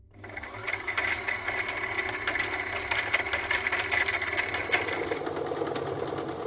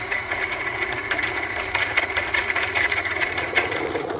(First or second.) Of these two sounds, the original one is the first